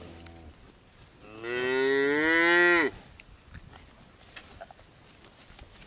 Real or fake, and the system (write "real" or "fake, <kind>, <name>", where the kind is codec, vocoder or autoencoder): real